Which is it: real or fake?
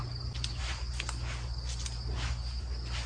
real